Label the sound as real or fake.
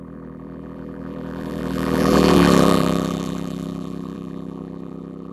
fake